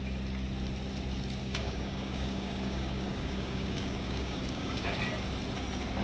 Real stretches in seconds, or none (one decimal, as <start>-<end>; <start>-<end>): 0.0-1.4; 5.0-6.0